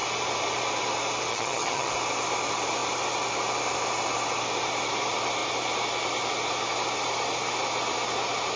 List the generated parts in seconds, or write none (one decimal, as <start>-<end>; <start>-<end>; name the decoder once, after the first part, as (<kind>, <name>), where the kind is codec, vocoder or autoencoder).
1.3-1.9 (vocoder, HiFi-GAN)